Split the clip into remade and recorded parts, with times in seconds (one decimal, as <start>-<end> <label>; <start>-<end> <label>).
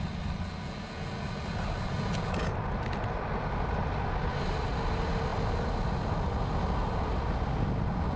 0.0-8.2 recorded